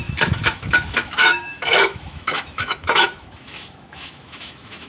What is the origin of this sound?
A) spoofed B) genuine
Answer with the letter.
A